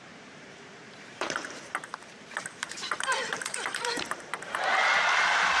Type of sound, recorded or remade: remade